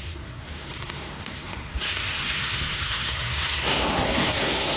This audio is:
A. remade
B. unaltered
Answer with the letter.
A